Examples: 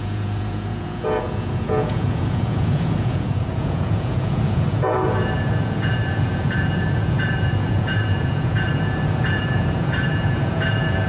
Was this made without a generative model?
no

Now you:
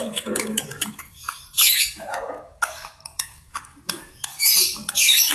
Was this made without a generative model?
no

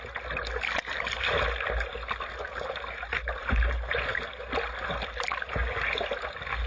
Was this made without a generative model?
yes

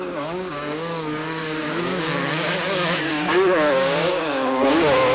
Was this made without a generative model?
no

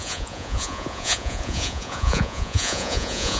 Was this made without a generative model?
no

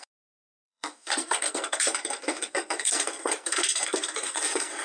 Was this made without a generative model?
no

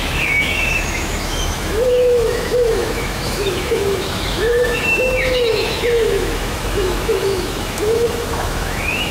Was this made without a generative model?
no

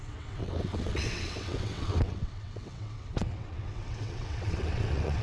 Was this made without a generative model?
no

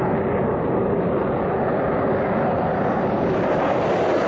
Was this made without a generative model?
yes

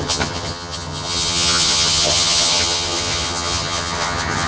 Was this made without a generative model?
no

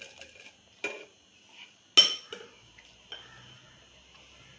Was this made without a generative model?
yes